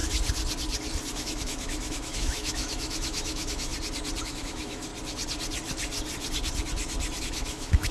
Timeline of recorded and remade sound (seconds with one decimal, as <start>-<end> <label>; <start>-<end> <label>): 0.0-1.1 recorded; 1.1-3.7 remade; 3.7-4.2 recorded; 4.2-4.9 remade; 4.9-7.2 recorded; 7.2-7.9 remade